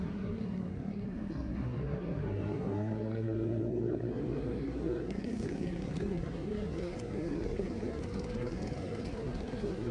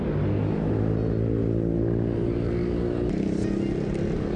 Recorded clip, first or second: second